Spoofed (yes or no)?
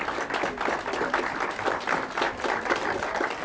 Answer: no